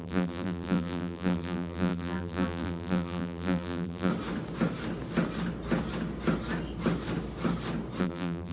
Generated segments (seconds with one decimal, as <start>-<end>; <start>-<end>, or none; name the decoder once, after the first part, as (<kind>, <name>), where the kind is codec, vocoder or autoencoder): 0.0-4.1 (vocoder, BigVGAN v2); 8.0-8.5